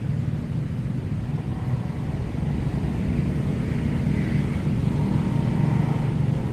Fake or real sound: real